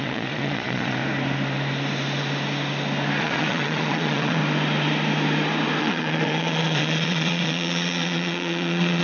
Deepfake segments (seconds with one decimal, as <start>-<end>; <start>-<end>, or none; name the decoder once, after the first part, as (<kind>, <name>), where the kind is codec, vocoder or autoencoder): 0.0-1.0 (vocoder, Vocos); 3.2-4.4; 5.8-9.0